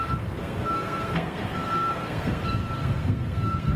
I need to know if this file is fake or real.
fake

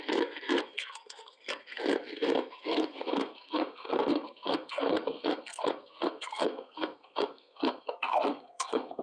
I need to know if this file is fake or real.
fake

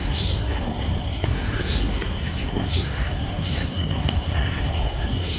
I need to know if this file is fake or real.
fake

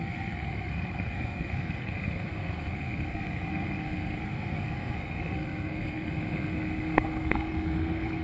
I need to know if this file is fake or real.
fake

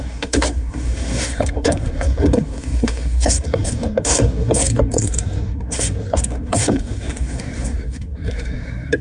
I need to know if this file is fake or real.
fake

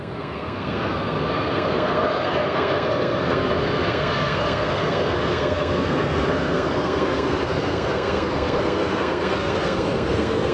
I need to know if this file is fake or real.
fake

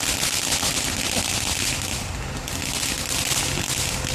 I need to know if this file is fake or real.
real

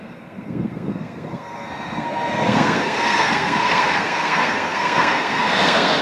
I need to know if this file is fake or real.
fake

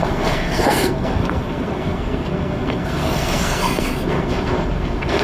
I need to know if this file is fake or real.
fake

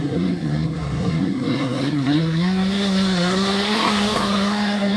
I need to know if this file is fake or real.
fake